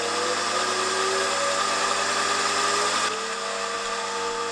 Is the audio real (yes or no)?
yes